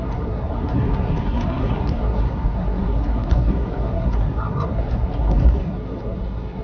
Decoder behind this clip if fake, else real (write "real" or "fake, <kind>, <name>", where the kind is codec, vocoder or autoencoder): fake, codec, SNAC